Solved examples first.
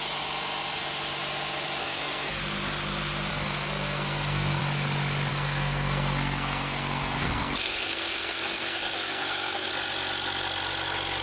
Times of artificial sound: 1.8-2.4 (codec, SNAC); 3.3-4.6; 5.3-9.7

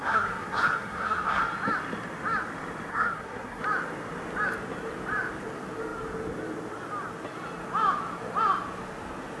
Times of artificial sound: 0.0-1.4 (codec, SNAC); 2.9-3.6

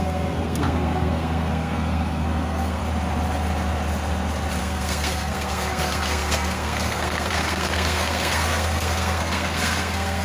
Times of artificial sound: 0.0-2.8 (codec, SNAC); 4.6-10.2

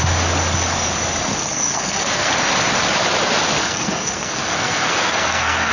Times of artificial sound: 1.3-2.3 (codec, SNAC); 3.6-5.7

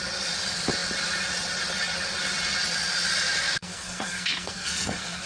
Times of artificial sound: 3.6-5.3 (codec, SNAC)

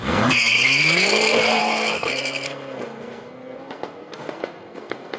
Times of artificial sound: 0.0-5.2 (codec, SNAC)

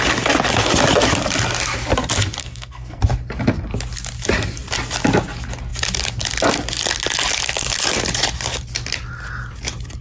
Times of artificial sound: 2.4-3.0 (codec, SNAC)

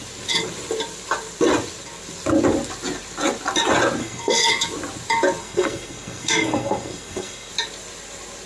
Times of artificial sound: 4.0-4.5 (codec, SNAC); 5.4-7.5